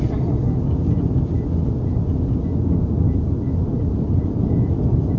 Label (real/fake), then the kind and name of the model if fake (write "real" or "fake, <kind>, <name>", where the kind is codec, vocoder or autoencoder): real